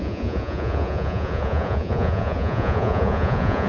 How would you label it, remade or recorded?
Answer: remade